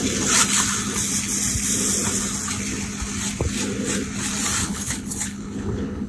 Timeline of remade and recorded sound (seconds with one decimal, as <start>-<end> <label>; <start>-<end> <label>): 0.0-4.6 recorded; 4.6-6.1 remade